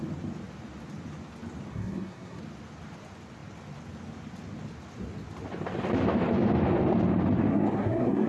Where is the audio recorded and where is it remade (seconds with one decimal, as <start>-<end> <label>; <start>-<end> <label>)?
0.0-1.7 recorded; 1.7-2.4 remade; 2.4-7.5 recorded; 7.5-8.3 remade